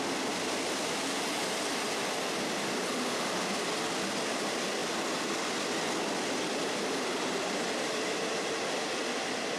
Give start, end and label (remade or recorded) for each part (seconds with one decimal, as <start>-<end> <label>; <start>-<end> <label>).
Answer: 0.0-9.6 recorded